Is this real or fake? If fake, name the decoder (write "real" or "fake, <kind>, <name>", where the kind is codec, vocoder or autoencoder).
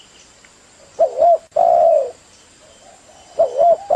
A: real